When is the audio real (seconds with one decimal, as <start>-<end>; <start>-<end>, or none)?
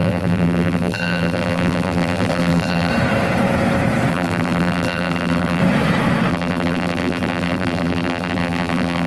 2.9-4.1; 5.6-6.3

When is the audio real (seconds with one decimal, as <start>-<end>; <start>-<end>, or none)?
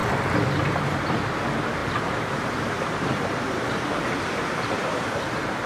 0.0-1.8; 5.2-5.7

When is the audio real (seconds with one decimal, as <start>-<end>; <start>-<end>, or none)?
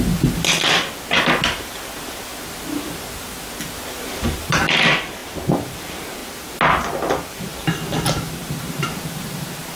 2.3-2.9; 6.2-7.3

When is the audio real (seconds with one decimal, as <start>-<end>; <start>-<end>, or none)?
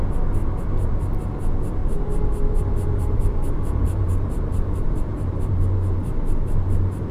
0.0-1.8; 5.6-7.1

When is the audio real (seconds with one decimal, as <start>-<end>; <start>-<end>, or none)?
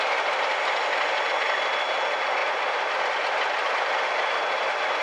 0.0-2.4; 3.9-5.0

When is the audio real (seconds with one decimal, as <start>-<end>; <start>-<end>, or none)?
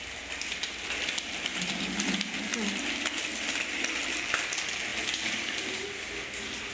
0.0-6.7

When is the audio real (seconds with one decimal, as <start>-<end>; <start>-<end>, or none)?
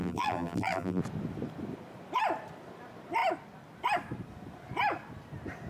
1.0-5.7